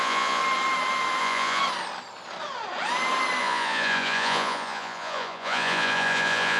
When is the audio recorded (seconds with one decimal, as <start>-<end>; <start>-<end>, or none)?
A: 0.4-1.2; 1.6-3.4